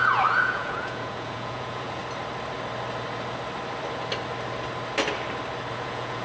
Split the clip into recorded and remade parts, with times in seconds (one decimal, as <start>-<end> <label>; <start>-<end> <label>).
0.0-2.0 remade; 2.0-5.7 recorded; 5.7-6.2 remade